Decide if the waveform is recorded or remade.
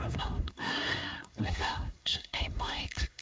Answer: remade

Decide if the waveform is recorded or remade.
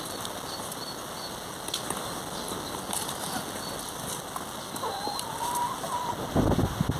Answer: recorded